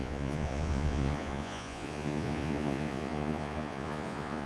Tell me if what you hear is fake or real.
fake